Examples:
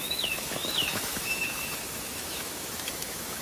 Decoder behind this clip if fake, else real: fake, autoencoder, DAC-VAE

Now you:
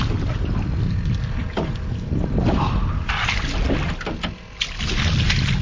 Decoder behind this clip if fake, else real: real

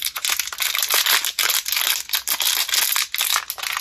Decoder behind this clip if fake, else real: real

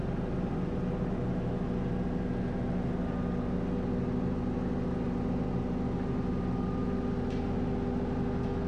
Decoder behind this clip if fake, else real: real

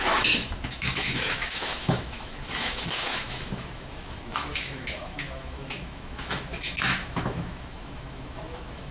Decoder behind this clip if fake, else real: fake, autoencoder, DAC-VAE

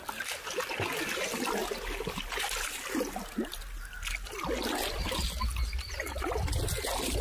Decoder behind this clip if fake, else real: real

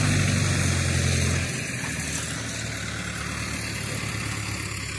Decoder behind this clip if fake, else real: real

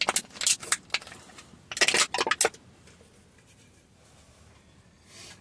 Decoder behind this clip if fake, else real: real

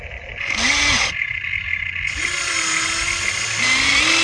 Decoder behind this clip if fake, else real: real